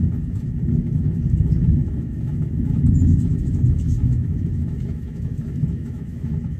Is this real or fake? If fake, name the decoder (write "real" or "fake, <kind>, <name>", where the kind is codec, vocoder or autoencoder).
fake, autoencoder, DAC-VAE